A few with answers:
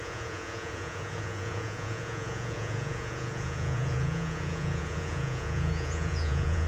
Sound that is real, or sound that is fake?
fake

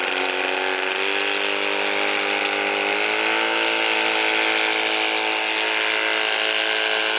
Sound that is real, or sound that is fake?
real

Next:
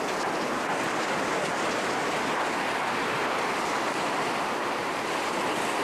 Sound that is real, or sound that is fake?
real